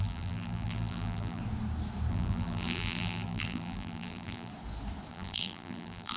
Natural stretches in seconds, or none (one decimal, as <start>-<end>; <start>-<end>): 1.4-2.1; 4.5-5.1